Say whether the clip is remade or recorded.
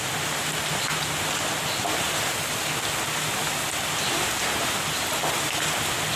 recorded